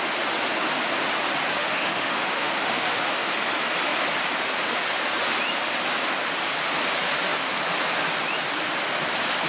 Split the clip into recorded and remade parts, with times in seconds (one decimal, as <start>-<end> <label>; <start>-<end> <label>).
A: 0.0-1.6 recorded; 1.6-3.3 remade; 3.3-9.5 recorded